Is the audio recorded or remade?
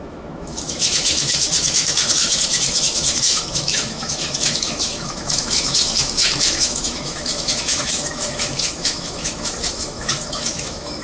remade